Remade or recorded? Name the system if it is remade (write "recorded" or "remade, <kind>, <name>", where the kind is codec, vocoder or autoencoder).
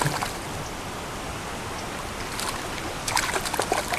recorded